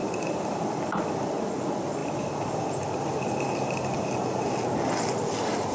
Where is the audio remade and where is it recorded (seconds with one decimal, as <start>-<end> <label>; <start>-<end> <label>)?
0.0-5.7 recorded